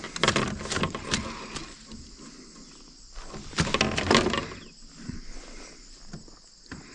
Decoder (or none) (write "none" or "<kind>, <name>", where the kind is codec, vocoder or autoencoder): none